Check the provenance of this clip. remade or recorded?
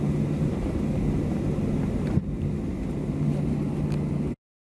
recorded